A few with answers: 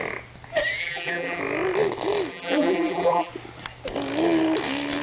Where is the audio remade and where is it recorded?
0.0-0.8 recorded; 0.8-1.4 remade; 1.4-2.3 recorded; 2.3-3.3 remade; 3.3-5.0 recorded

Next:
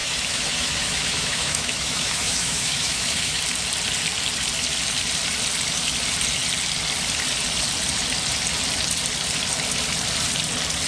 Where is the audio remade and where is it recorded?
0.0-3.4 remade; 3.4-10.9 recorded

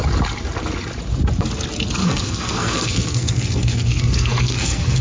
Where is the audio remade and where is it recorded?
0.0-2.0 recorded; 2.0-5.0 remade

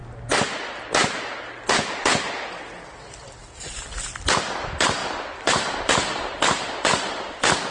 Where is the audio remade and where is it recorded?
0.0-7.7 recorded

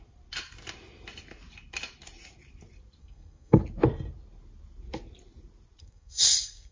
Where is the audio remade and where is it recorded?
0.0-3.0 recorded; 3.0-3.6 remade; 3.6-5.8 recorded; 5.8-6.7 remade

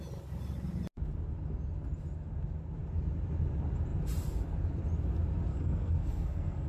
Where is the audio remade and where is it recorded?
0.0-5.5 recorded; 5.5-6.7 remade

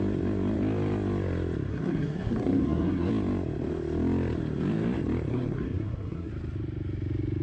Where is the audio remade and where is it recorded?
0.0-1.7 recorded; 1.7-3.1 remade; 3.1-5.3 recorded; 5.3-6.3 remade; 6.3-7.4 recorded

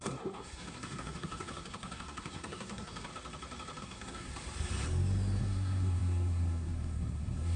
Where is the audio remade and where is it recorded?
0.0-3.1 remade; 3.1-3.8 recorded; 3.8-4.3 remade; 4.3-5.4 recorded; 5.4-7.6 remade